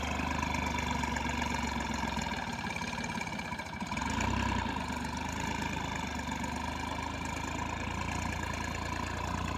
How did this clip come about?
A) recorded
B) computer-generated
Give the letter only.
A